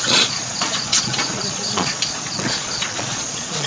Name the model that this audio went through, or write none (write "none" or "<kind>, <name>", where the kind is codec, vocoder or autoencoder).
vocoder, Vocos